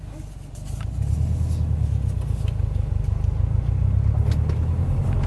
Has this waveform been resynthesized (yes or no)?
no